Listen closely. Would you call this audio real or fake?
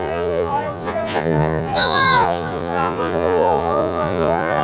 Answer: fake